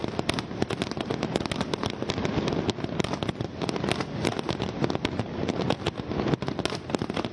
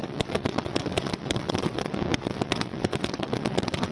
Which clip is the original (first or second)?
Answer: first